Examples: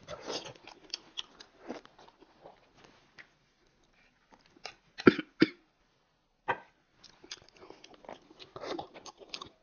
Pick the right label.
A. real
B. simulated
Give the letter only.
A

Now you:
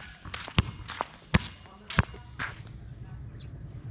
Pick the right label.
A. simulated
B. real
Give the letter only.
B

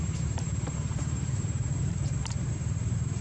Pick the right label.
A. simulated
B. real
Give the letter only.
A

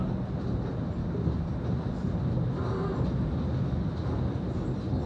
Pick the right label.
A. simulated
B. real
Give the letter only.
B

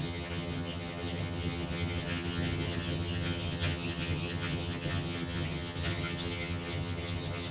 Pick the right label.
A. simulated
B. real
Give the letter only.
A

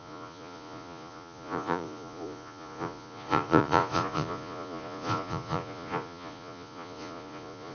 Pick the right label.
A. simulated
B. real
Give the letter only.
A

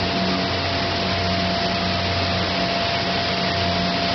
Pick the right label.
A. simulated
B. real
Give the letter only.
B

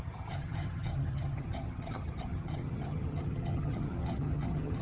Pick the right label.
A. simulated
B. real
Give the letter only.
A